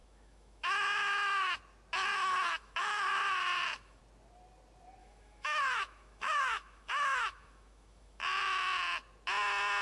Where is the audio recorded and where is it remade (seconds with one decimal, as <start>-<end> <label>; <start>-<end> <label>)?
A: 0.0-1.6 remade; 1.6-2.1 recorded; 2.1-4.0 remade; 4.0-5.0 recorded; 5.0-8.2 remade; 8.2-9.8 recorded